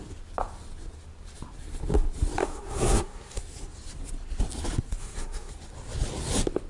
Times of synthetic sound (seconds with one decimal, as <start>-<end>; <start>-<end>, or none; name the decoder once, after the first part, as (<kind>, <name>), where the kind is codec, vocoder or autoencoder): 2.4-3.4 (codec, SNAC); 5.0-5.5